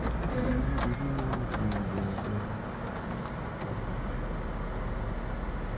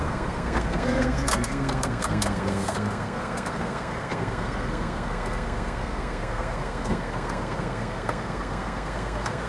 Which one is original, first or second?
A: first